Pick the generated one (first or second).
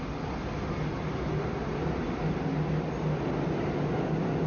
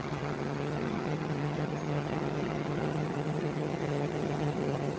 second